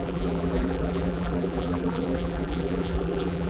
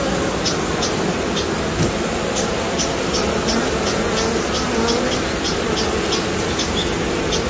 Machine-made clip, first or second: first